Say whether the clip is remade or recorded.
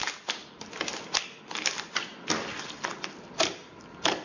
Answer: recorded